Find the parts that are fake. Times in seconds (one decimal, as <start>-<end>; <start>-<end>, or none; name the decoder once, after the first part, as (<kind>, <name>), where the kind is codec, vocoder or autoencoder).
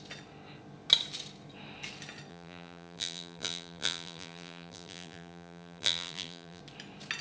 2.3-6.6 (vocoder, BigVGAN v2)